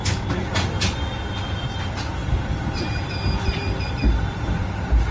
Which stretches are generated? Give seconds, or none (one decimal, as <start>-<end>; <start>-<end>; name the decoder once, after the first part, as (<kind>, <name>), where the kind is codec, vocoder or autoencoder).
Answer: 2.2-3.9 (vocoder, BigVGAN v2)